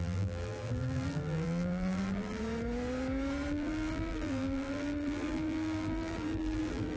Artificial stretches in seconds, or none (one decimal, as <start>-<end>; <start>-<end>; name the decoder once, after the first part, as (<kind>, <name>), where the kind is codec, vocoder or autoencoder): 0.0-2.4 (vocoder, BigVGAN v2); 3.5-7.0